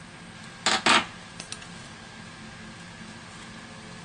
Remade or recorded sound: recorded